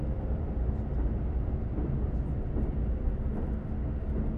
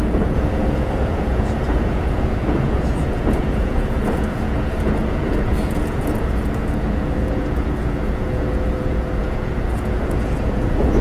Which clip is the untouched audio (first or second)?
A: first